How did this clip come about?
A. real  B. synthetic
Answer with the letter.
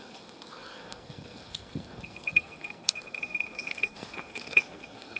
B